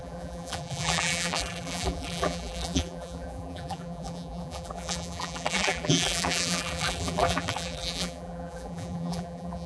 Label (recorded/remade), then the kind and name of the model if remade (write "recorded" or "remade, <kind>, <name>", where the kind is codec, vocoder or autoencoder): remade, vocoder, BigVGAN v2